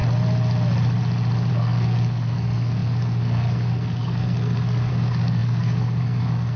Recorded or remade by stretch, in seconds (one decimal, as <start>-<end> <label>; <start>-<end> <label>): 0.0-1.5 recorded; 1.5-6.6 remade